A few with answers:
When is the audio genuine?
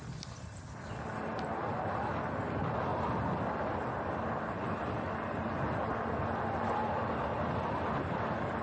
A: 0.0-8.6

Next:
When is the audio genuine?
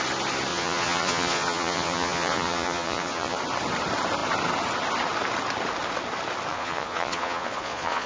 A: 0.0-0.5; 3.4-6.5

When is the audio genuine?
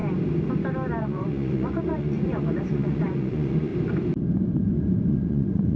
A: 0.0-1.0; 3.7-4.8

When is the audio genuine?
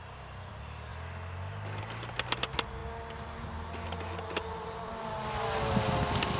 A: 0.0-6.4